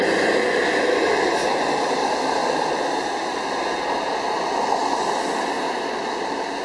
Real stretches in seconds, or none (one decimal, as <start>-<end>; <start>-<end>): 0.0-6.6